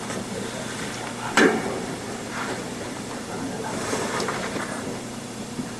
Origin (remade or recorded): remade